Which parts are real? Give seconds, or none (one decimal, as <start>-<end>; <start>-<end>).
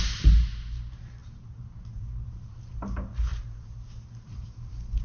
none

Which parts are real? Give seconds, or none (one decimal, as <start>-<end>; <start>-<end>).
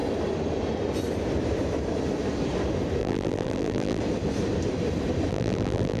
0.0-3.0; 4.0-5.3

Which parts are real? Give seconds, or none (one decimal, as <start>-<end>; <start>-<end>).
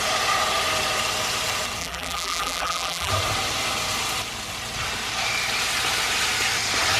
0.0-1.8; 3.1-7.0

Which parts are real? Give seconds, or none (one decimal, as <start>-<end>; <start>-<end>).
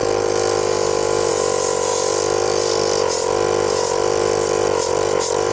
0.0-1.9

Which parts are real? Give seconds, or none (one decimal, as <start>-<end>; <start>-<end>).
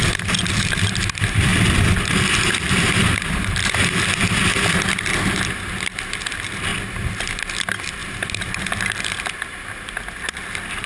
1.5-2.0; 6.7-7.3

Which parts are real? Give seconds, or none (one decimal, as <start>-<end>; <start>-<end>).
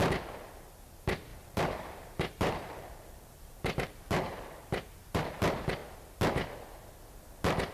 0.0-1.3; 5.2-7.7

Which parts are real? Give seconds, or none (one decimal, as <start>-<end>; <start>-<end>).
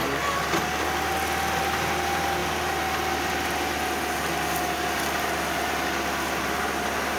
0.0-7.2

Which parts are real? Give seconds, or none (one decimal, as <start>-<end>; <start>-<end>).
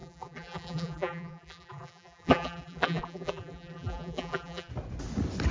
4.7-5.5